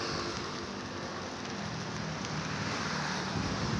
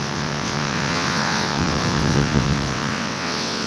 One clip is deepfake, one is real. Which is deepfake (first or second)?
second